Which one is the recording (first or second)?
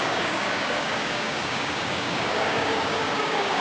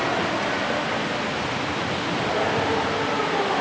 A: second